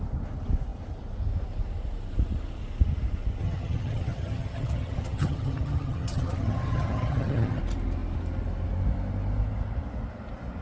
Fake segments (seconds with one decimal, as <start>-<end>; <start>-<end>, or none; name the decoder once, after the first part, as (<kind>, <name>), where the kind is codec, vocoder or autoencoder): 3.4-7.6 (vocoder, HiFi-GAN)